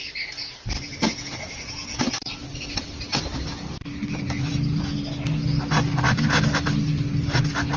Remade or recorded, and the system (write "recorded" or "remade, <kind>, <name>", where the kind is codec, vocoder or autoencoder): recorded